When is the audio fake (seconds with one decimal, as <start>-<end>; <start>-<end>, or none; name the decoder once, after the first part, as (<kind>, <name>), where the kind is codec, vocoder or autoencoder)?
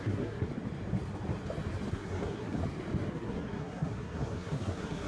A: 0.0-0.5 (codec, SNAC); 1.9-2.6; 3.1-5.1